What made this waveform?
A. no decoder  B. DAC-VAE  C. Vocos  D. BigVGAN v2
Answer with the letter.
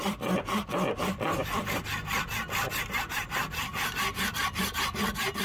D